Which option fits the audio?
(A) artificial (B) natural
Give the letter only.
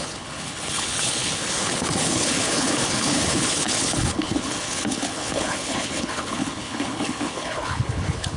A